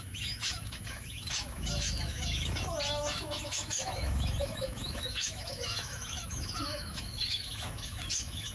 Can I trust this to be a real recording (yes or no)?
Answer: no